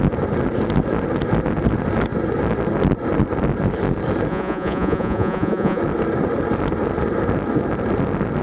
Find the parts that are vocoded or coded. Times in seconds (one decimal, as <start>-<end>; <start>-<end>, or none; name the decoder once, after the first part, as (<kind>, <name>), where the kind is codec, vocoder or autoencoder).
4.3-5.8 (vocoder, Vocos)